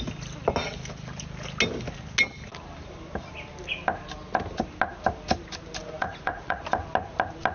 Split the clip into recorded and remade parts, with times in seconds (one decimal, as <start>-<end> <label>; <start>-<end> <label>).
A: 0.0-5.8 recorded; 5.8-6.6 remade; 6.6-7.5 recorded